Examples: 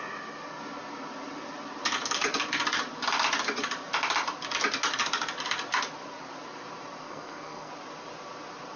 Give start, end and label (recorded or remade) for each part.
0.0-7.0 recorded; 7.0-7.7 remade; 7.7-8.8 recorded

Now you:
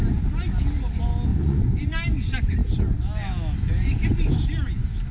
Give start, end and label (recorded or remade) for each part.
0.0-1.3 recorded; 1.3-1.9 remade; 1.9-5.1 recorded

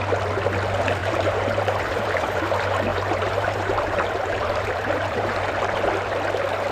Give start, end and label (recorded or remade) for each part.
0.0-1.0 recorded; 1.0-2.4 remade; 2.4-2.9 recorded; 2.9-5.4 remade; 5.4-6.7 recorded

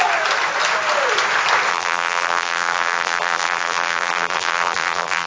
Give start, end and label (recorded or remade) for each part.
0.0-1.7 recorded; 1.7-5.3 remade

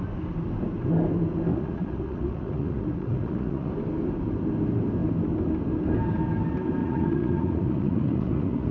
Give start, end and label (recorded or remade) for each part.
0.0-1.5 recorded; 1.5-3.7 remade; 3.7-6.8 recorded; 6.8-8.7 remade

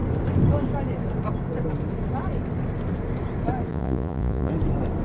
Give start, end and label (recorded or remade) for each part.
0.0-3.7 recorded; 3.7-4.5 remade; 4.5-5.0 recorded

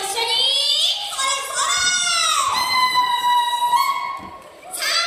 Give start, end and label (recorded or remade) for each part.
0.0-2.8 recorded; 2.8-3.6 remade; 3.6-5.1 recorded

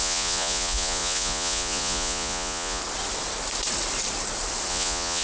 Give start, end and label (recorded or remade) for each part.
0.0-2.8 remade; 2.8-4.7 recorded; 4.7-5.2 remade